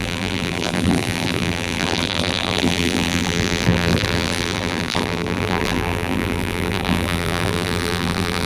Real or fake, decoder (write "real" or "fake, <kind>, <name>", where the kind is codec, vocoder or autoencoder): fake, vocoder, BigVGAN v2